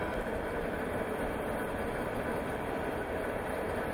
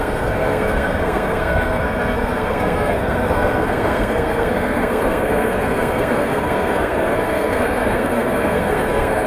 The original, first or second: first